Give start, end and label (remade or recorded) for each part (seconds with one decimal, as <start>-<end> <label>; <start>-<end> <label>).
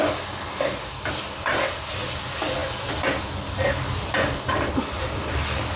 0.0-5.8 recorded